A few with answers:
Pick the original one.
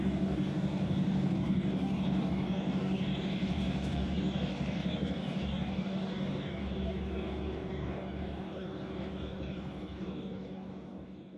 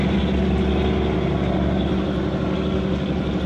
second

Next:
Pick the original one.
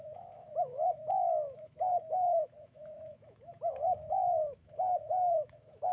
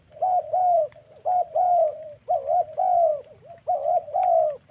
second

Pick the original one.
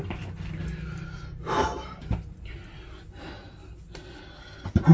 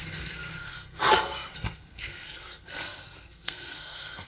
first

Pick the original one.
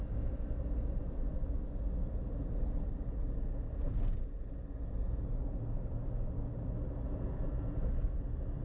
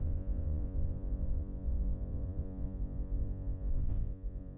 first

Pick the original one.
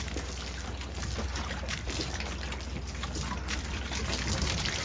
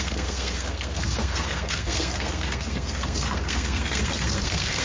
first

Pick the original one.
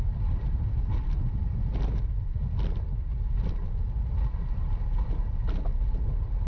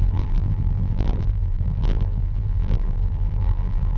first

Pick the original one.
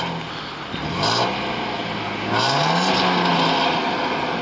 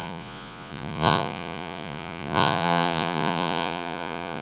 first